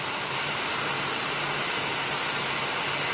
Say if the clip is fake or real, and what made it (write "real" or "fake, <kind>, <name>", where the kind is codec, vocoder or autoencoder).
fake, vocoder, BigVGAN v2